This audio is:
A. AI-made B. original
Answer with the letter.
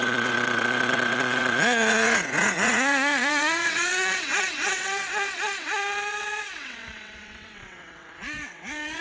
A